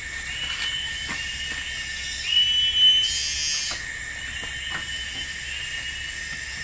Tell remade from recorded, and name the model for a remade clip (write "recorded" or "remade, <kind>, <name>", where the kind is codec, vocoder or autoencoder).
recorded